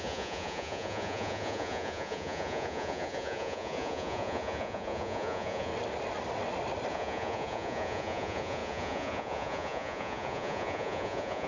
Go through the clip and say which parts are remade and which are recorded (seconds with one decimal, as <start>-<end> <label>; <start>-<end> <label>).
0.0-5.7 remade; 5.7-6.9 recorded; 6.9-11.5 remade